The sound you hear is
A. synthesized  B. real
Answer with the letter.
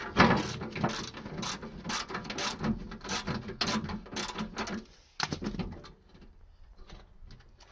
B